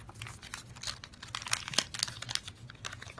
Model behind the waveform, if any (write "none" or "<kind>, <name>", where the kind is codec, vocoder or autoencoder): none